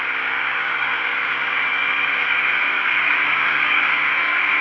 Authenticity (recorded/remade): remade